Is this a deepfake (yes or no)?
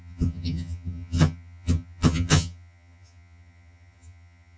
yes